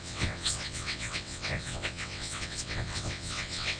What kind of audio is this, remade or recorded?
remade